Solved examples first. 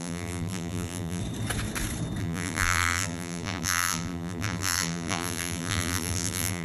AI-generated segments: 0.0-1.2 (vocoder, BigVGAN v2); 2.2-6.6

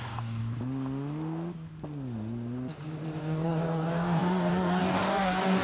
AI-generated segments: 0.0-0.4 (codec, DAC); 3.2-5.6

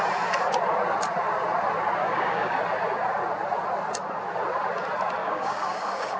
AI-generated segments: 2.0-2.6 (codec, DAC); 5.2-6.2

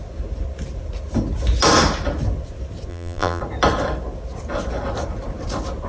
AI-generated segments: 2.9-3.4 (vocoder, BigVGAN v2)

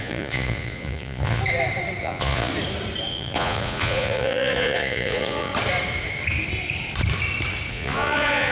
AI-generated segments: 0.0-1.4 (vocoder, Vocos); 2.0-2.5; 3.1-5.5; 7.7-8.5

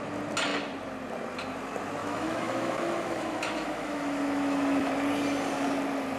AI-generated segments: 2.0-4.9 (autoencoder, DAC-VAE)

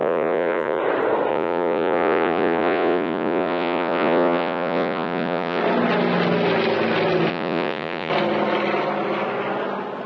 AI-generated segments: 0.0-0.8 (vocoder, Vocos); 1.3-5.6; 7.3-8.1